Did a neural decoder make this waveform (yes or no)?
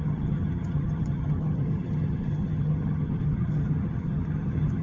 yes